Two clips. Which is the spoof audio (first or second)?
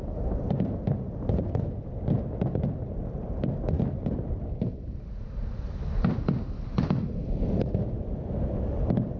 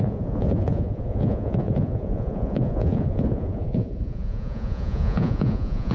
second